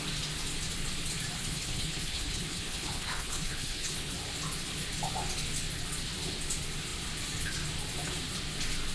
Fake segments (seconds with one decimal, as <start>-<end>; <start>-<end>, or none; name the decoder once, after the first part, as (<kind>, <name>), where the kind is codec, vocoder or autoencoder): 1.4-4.1 (codec, HILCodec)